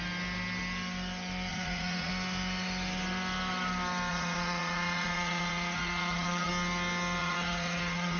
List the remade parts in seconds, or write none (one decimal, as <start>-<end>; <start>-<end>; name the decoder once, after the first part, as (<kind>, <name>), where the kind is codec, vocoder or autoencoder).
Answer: 1.5-2.1 (vocoder, Vocos); 4.1-6.5; 7.2-8.2